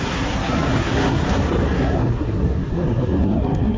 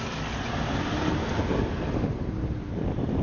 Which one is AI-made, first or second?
first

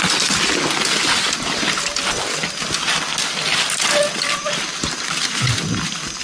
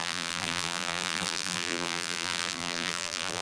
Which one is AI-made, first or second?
second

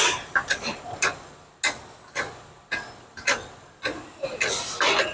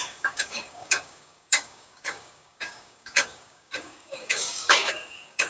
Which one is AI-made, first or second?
second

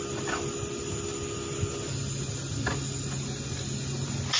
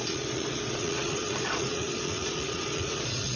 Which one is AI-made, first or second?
second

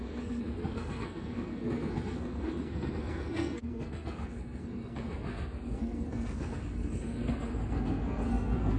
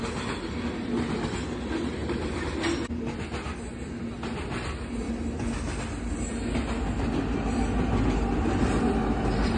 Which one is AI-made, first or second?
first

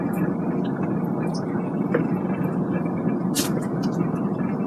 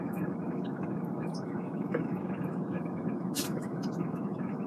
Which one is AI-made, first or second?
second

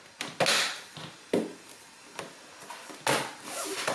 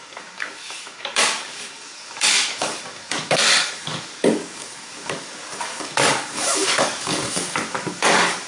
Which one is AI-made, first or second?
second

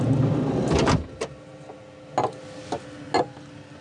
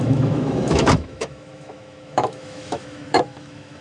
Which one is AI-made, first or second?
second